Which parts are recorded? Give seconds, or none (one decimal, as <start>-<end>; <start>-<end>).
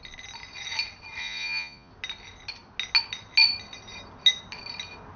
0.0-1.2; 1.9-5.2